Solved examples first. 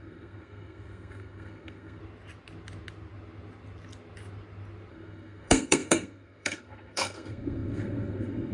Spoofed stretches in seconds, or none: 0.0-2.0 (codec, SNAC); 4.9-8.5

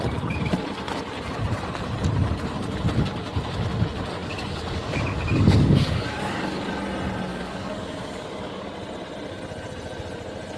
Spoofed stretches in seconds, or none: 4.2-6.7 (codec, DAC); 7.3-8.7